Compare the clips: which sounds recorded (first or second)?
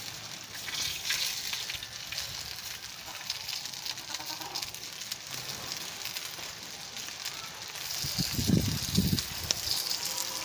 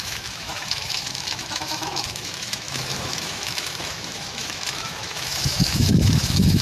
first